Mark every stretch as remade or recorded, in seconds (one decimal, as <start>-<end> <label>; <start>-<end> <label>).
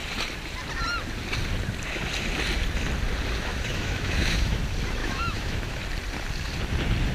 0.0-3.5 recorded; 3.5-4.6 remade; 4.6-5.0 recorded; 5.0-5.8 remade; 5.8-7.1 recorded